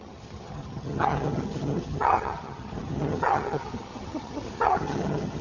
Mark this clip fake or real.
fake